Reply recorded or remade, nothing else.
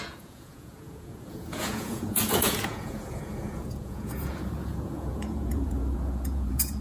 remade